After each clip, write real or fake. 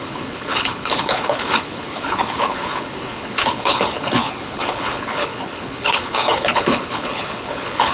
fake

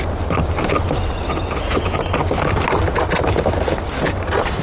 real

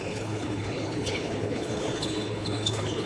fake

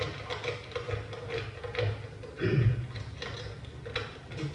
real